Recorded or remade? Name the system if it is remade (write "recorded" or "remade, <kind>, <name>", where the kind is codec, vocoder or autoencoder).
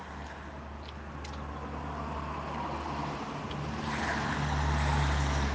recorded